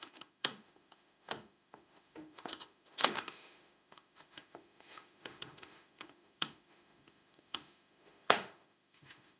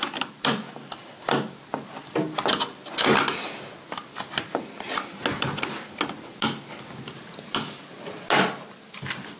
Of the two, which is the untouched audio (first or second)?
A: second